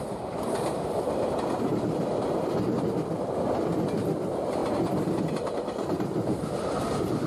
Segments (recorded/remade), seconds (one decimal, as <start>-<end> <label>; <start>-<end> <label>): 0.0-7.3 remade